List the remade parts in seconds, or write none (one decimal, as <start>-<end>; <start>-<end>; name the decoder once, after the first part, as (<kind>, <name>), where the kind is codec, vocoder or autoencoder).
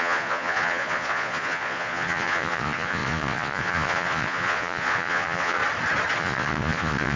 0.0-5.6 (vocoder, Vocos); 6.2-7.2